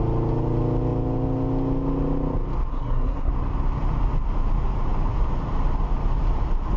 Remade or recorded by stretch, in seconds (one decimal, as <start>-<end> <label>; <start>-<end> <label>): 0.0-2.7 recorded; 2.7-3.3 remade; 3.3-6.8 recorded